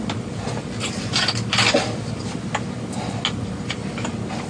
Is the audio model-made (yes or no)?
no